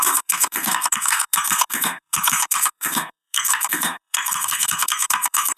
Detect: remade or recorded remade